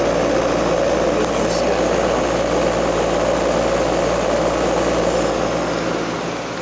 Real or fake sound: real